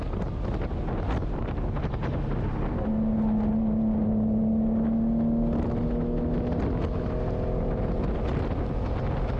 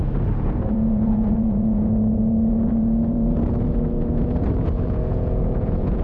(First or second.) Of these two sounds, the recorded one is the first